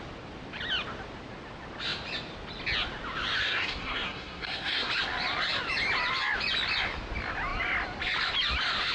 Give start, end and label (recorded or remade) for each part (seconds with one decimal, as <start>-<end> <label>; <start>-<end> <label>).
0.0-3.4 recorded; 3.4-4.9 remade; 4.9-8.9 recorded